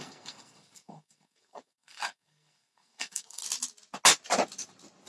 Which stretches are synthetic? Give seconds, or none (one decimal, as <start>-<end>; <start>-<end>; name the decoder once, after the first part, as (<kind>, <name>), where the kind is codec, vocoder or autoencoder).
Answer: 0.0-3.4 (codec, SNAC)